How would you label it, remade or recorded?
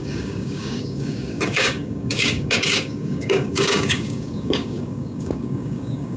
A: remade